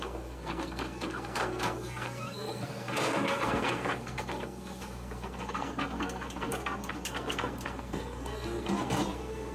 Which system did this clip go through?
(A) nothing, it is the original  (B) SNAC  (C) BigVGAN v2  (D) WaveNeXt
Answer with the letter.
B